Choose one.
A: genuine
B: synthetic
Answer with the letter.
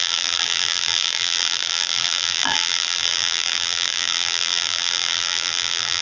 B